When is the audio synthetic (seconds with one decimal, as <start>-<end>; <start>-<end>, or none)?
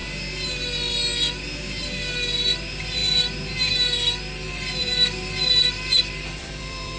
1.6-3.0; 4.5-7.0